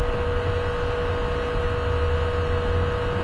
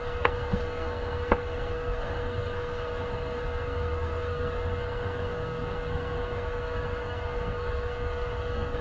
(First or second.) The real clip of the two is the first